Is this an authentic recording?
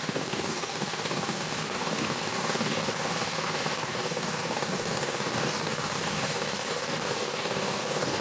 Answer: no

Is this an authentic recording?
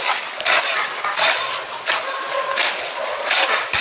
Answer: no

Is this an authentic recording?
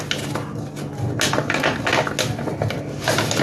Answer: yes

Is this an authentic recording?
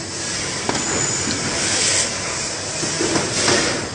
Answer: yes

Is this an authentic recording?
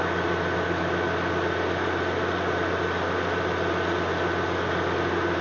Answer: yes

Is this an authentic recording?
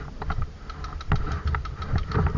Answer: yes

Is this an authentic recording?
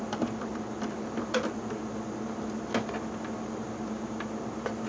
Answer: yes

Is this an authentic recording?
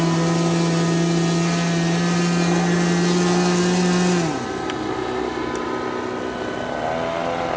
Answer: yes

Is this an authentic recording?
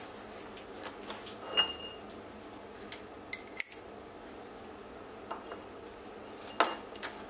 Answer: yes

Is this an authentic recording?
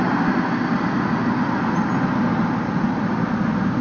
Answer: yes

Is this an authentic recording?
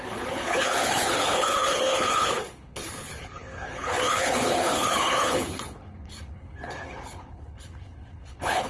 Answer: no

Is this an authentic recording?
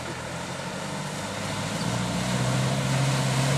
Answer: yes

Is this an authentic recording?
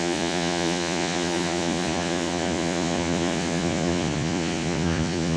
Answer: no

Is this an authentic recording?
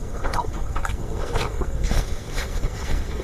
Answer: no